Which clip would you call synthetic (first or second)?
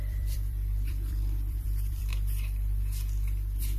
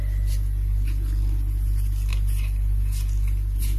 first